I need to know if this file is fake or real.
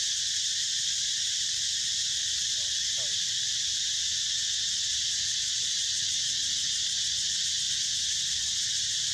real